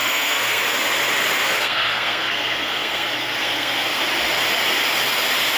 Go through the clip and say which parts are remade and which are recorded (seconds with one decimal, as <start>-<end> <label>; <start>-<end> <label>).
0.0-0.6 remade; 0.6-1.4 recorded; 1.4-4.0 remade; 4.0-5.6 recorded